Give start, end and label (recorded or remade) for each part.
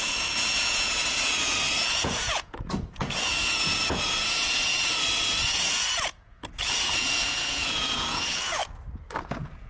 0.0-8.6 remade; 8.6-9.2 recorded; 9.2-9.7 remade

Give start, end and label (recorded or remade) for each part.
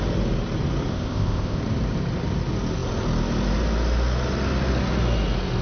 0.0-0.9 recorded; 0.9-1.6 remade; 1.6-5.6 recorded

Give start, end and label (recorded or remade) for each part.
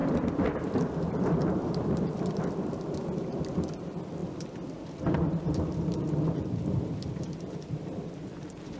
0.0-8.8 remade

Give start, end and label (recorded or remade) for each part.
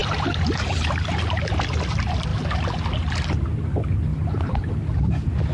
0.0-1.1 remade; 1.1-4.1 recorded; 4.1-4.7 remade; 4.7-5.5 recorded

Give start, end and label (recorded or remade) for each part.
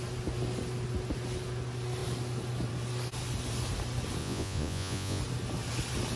0.0-4.2 recorded; 4.2-5.2 remade; 5.2-6.2 recorded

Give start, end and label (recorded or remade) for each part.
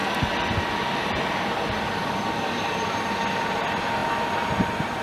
0.0-5.0 recorded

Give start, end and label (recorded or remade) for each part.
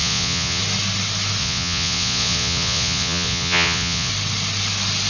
0.0-0.6 remade; 0.6-1.4 recorded; 1.4-4.1 remade; 4.1-5.1 recorded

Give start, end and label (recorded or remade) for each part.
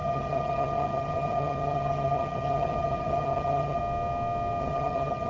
0.0-3.8 remade; 3.8-4.6 recorded; 4.6-5.3 remade